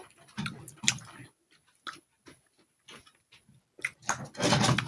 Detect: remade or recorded recorded